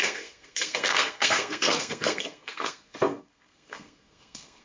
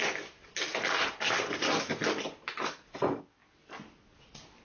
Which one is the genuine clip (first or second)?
second